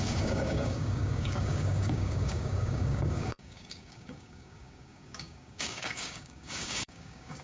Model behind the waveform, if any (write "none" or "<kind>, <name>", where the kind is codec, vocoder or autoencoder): codec, DAC